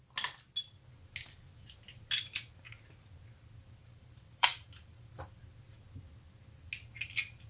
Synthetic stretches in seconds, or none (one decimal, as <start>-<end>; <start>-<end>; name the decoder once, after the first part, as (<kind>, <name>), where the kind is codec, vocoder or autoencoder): 3.8-5.4 (vocoder, BigVGAN v2)